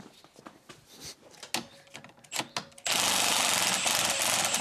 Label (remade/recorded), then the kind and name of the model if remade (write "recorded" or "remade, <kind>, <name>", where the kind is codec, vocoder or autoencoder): recorded